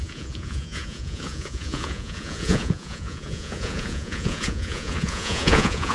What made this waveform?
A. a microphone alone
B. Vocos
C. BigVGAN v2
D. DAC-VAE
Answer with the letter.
B